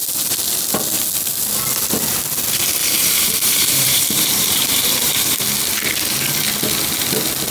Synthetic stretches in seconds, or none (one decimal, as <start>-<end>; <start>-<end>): 2.8-5.4